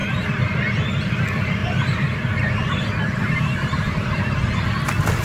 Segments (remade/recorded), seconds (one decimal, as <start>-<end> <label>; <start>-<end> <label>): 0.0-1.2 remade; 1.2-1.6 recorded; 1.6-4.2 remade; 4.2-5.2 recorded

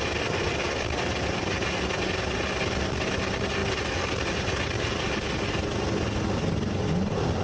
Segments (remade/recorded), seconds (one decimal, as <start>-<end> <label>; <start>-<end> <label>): 0.0-7.4 recorded

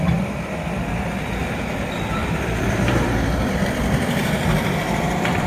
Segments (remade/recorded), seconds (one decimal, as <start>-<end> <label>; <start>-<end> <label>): 0.0-2.2 recorded; 2.2-5.5 remade